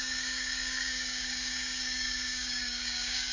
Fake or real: fake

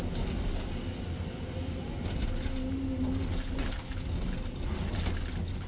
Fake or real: real